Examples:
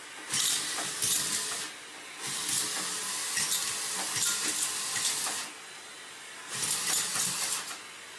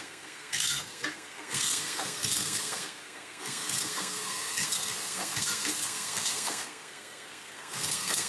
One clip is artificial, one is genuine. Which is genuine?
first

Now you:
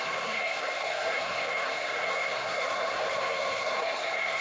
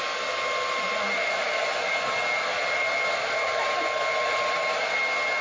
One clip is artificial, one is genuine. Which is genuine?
second